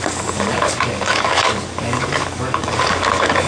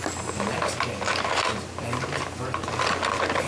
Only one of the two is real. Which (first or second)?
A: second